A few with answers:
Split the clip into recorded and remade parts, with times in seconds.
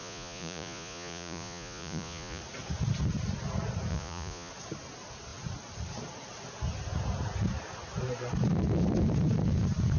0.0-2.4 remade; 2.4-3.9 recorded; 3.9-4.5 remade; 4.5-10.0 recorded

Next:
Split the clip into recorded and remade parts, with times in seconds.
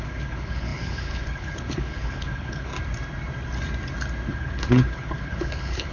0.0-2.7 remade; 2.7-4.3 recorded; 4.3-5.9 remade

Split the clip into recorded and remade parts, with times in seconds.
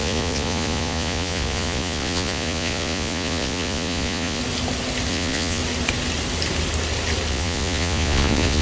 0.0-4.4 remade; 4.4-5.1 recorded; 5.1-5.6 remade; 5.6-7.3 recorded; 7.3-8.6 remade